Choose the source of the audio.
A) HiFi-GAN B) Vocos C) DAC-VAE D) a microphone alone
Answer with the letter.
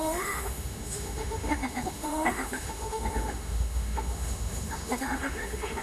C